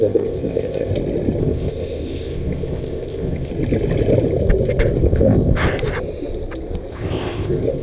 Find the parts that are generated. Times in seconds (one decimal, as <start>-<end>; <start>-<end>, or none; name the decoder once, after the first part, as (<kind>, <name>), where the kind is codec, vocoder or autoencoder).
0.0-0.9 (codec, ZipCodec); 1.4-3.5; 5.0-5.7; 6.9-7.8